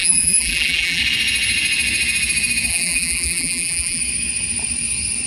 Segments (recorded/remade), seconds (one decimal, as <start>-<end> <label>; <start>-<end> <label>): 0.0-1.0 remade; 1.0-2.7 recorded; 2.7-4.0 remade; 4.0-5.3 recorded